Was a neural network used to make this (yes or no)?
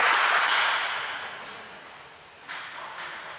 yes